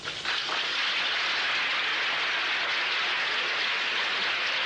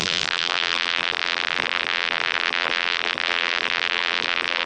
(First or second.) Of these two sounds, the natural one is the first